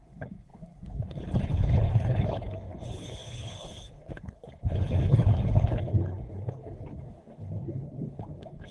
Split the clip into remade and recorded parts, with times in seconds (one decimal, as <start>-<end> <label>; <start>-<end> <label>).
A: 0.0-8.7 remade